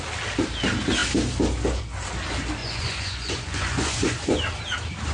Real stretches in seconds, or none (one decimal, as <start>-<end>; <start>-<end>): 0.0-2.6; 4.4-5.1